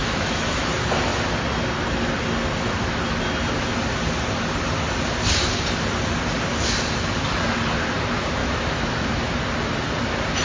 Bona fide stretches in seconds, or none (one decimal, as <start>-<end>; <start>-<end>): 0.7-8.4; 9.3-10.4